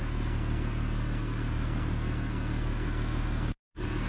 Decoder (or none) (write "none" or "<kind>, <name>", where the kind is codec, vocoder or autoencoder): codec, SNAC